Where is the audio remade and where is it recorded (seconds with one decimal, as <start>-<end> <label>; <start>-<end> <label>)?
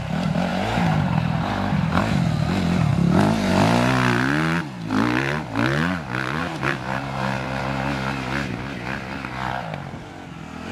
0.0-0.5 recorded; 0.5-2.0 remade; 2.0-6.4 recorded; 6.4-7.6 remade; 7.6-10.7 recorded